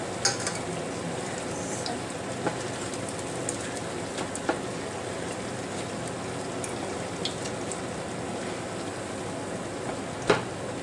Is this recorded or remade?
recorded